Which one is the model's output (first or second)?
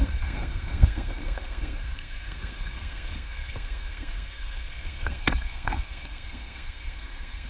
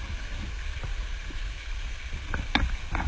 first